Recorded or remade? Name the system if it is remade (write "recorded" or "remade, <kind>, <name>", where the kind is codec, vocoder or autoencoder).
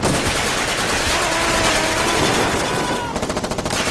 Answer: recorded